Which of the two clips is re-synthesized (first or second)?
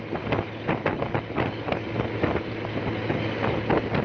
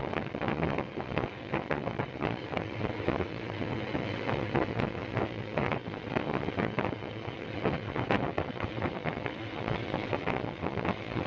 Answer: second